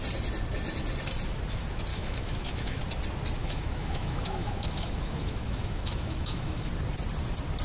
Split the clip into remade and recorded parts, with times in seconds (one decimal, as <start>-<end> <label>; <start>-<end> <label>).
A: 0.0-1.9 recorded; 1.9-2.8 remade; 2.8-3.4 recorded; 3.4-6.7 remade; 6.7-7.6 recorded